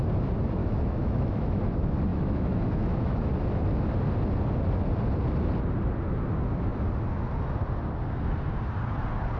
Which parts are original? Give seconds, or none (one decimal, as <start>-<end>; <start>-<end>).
0.0-0.6; 1.6-2.1; 3.3-9.4

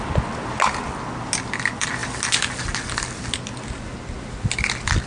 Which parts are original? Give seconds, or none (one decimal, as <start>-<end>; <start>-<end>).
0.0-5.1

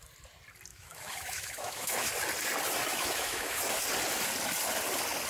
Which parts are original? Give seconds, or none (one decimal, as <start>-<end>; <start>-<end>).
0.0-0.7; 2.1-2.9; 3.6-5.3

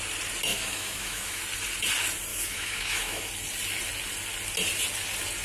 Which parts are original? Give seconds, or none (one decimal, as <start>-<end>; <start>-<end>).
0.0-0.5; 1.4-2.3; 3.3-5.4